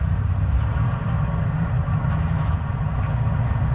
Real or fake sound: fake